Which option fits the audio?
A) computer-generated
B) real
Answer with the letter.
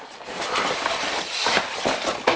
B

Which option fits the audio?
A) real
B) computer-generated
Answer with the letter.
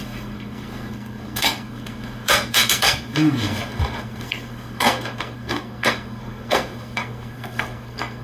B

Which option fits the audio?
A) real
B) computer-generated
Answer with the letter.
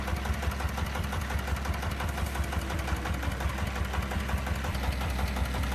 A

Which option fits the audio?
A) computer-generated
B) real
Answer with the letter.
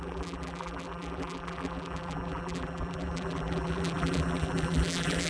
A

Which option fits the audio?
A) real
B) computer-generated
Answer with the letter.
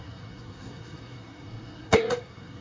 B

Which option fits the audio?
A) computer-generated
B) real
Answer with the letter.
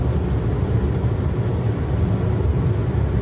B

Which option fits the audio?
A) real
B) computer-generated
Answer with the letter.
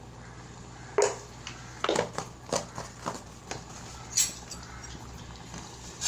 A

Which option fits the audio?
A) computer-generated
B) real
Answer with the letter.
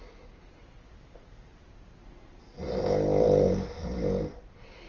B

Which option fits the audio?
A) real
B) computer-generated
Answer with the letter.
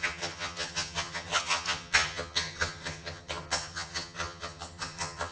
B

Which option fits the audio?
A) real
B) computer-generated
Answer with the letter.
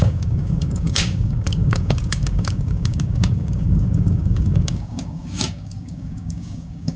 B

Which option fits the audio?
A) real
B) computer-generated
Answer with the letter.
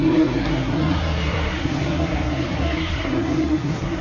B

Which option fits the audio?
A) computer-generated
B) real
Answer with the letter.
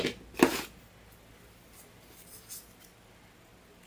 B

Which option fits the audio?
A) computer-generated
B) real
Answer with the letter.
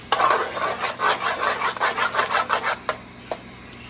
B